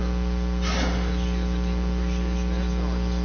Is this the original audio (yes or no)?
yes